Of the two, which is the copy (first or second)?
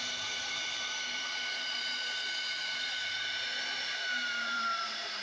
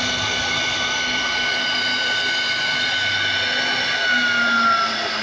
first